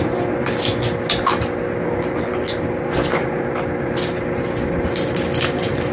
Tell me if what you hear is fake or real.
real